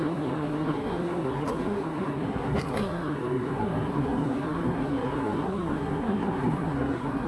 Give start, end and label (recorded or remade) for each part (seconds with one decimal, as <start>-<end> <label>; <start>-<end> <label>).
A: 0.0-7.3 remade